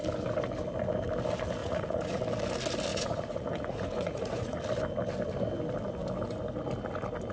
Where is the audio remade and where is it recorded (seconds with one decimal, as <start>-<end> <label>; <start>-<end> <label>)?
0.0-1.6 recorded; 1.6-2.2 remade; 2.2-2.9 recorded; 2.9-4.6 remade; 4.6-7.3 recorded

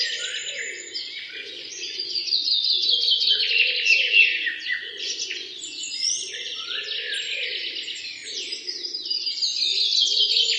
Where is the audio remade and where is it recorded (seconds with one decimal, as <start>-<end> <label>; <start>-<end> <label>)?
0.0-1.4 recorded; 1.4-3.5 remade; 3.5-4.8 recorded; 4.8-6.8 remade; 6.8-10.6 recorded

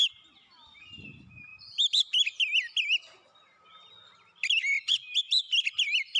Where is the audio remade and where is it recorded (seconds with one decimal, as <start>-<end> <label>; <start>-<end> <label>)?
0.0-6.2 recorded